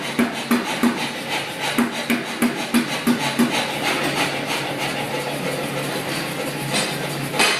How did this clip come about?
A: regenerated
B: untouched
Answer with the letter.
B